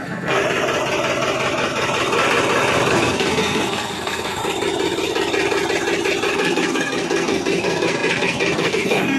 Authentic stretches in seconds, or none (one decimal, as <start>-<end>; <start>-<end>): 0.4-2.9; 4.4-6.3